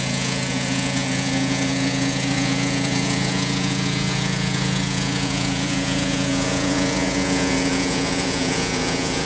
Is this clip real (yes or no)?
no